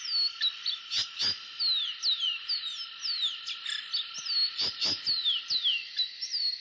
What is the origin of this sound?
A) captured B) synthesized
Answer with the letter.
A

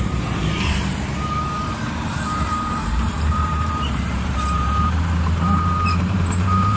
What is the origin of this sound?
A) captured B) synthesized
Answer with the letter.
B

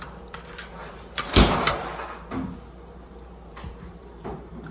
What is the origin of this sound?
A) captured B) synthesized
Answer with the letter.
B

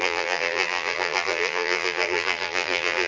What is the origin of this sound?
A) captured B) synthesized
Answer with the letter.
B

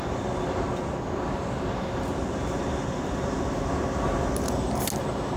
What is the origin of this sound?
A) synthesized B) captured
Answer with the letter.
B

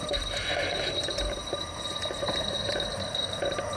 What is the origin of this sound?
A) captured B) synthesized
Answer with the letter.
B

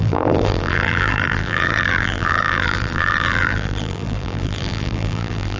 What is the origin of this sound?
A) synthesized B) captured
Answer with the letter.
A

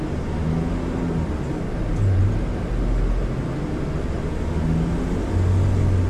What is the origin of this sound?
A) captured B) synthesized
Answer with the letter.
A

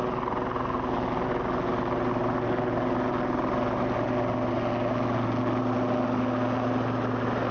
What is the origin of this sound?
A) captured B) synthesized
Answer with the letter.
A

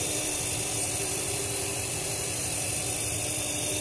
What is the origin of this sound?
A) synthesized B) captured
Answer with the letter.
A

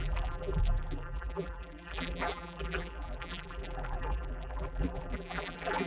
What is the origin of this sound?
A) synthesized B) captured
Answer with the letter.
A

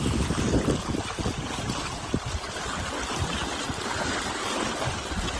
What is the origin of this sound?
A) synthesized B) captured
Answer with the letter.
B